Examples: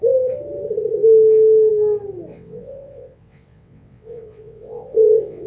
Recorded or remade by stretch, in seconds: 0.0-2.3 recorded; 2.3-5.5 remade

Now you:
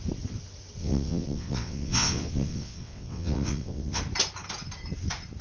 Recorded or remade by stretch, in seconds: 0.0-0.8 recorded; 0.8-4.0 remade; 4.0-5.4 recorded

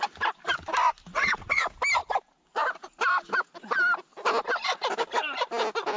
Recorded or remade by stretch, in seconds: 0.0-1.1 recorded; 1.1-1.6 remade; 1.6-6.0 recorded

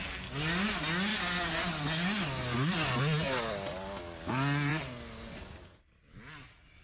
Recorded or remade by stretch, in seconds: 0.0-6.8 recorded